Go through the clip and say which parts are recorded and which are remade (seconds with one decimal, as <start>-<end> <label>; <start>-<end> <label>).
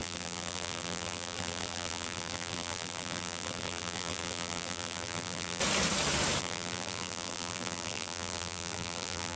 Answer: 0.0-5.6 remade; 5.6-6.4 recorded; 6.4-9.4 remade